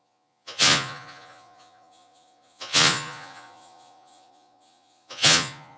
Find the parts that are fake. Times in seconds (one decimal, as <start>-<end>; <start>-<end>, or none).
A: 0.0-5.8